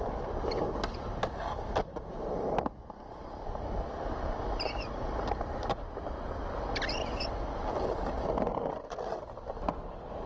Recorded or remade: recorded